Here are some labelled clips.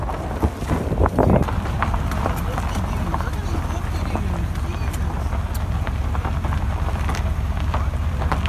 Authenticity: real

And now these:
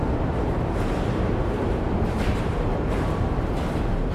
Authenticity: fake